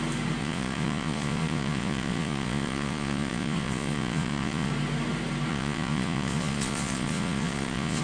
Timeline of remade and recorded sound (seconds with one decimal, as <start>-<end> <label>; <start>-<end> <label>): 0.0-0.4 recorded; 0.4-4.7 remade; 4.7-5.5 recorded; 5.5-8.0 remade